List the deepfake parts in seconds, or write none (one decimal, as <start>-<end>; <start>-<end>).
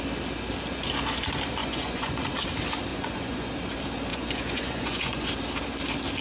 1.6-2.2; 2.9-3.5; 4.1-5.3